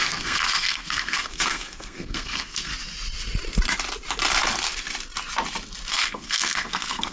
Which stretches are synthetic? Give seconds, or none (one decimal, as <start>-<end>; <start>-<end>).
0.0-2.7; 5.9-7.1